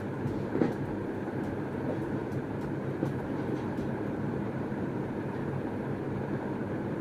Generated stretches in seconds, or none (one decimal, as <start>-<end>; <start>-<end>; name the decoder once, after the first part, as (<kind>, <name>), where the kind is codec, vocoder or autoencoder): 2.2-5.8 (vocoder, BigVGAN v2)